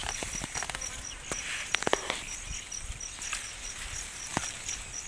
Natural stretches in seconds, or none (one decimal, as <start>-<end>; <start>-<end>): 0.0-4.3